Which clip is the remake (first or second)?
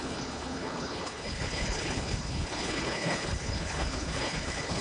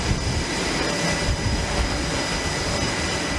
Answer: first